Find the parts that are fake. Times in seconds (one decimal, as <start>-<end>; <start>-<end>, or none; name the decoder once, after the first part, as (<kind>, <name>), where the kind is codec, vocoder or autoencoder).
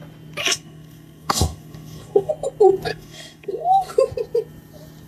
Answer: 0.4-2.3 (codec, SNAC); 2.9-3.9